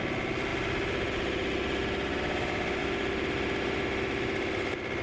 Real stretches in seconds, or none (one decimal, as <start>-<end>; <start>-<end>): 0.0-5.0